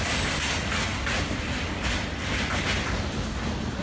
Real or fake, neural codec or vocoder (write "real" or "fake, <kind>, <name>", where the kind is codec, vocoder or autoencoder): real